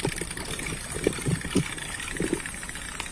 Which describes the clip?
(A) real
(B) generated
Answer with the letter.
A